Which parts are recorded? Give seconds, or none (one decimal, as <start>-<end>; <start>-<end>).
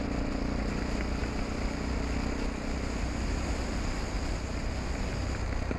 0.0-5.8